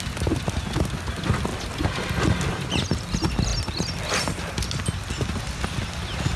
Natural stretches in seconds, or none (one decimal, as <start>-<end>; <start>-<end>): 0.0-6.4

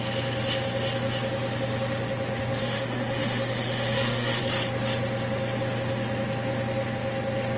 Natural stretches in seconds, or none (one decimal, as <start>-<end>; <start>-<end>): 0.0-2.6; 4.4-7.6

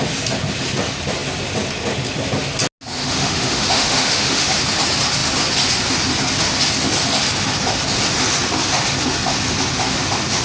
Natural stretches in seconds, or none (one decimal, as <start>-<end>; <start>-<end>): 0.0-3.0; 4.5-10.4

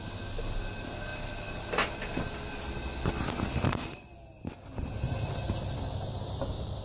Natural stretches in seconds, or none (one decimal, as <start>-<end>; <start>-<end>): 0.0-6.8

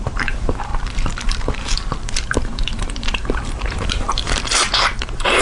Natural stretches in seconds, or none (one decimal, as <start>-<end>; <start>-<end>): none

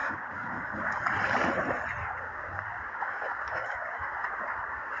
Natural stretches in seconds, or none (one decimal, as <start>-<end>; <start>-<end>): 1.0-2.0

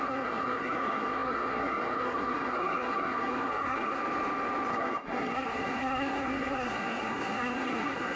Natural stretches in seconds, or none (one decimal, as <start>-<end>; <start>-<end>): 4.0-4.7

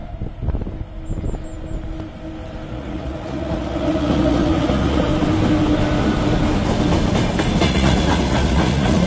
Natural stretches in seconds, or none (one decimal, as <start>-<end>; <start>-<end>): 0.0-2.7; 5.1-7.6